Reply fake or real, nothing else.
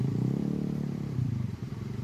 fake